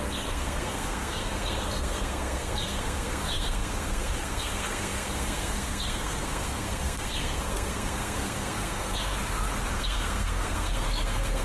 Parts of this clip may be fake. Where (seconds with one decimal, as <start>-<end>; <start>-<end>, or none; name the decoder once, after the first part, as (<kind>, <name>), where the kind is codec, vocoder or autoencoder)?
0.0-9.2 (codec, SNAC); 9.7-11.4